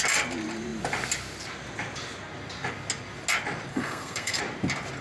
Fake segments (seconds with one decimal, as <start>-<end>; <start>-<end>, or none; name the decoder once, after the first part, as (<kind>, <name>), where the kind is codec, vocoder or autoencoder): 3.7-4.4 (codec, SNAC)